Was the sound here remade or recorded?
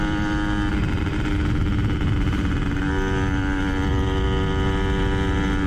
recorded